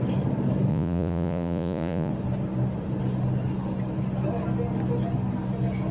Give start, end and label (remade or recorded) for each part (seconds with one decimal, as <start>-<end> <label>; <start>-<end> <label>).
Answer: 0.0-0.7 recorded; 0.7-2.1 remade; 2.1-5.9 recorded